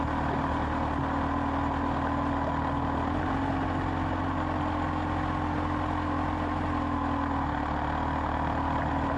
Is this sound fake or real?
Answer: real